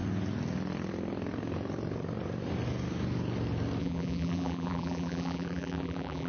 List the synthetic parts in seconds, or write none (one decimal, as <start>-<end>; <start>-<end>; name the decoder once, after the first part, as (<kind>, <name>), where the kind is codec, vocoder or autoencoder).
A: 3.8-6.3 (vocoder, BigVGAN v2)